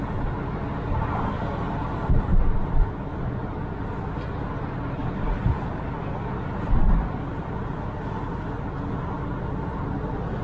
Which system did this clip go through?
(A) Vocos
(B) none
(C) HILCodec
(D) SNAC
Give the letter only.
B